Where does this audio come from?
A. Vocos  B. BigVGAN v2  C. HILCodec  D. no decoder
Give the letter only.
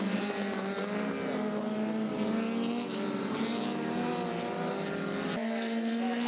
D